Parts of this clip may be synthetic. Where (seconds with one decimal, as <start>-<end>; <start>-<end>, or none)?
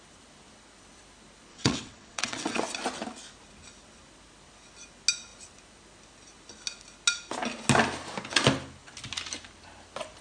1.5-2.6